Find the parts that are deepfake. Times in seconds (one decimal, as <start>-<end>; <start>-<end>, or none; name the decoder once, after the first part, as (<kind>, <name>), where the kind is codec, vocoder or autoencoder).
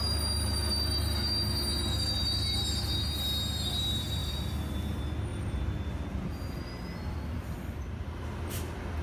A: none